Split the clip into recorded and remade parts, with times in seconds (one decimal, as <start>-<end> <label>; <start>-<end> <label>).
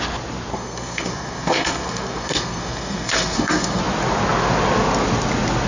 0.0-0.5 recorded; 0.5-3.8 remade; 3.8-5.7 recorded